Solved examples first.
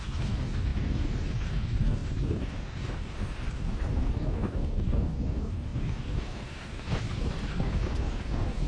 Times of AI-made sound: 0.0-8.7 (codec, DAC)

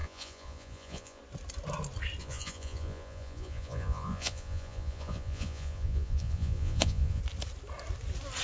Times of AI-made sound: 0.0-1.2 (vocoder, Vocos); 2.2-7.2